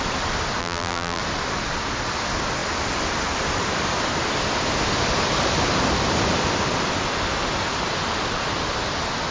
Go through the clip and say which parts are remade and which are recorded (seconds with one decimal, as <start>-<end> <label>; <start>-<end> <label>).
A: 0.0-0.6 recorded; 0.6-1.2 remade; 1.2-9.3 recorded